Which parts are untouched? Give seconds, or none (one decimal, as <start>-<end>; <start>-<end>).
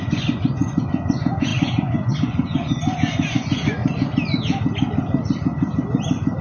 3.8-6.4